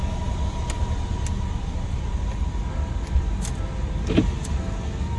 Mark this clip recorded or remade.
recorded